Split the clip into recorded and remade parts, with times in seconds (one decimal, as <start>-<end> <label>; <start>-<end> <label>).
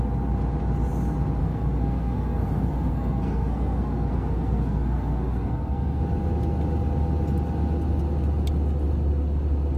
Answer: 0.0-1.4 recorded; 1.4-6.0 remade; 6.0-9.8 recorded